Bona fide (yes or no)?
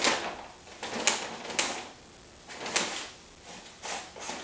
yes